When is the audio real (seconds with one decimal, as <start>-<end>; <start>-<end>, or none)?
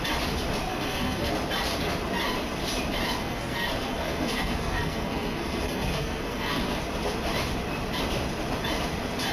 0.0-0.7; 1.3-3.2; 6.8-9.3